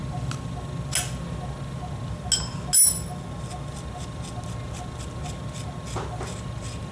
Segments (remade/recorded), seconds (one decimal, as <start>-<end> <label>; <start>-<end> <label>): 0.0-6.9 recorded